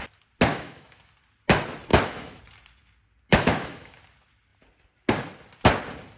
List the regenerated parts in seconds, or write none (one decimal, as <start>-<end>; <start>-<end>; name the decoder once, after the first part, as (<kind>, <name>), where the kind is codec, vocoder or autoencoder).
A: 0.5-1.0 (autoencoder, DAC-VAE); 1.9-2.4; 3.3-4.0